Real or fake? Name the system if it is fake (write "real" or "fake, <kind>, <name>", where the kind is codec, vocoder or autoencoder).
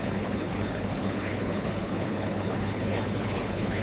fake, codec, HILCodec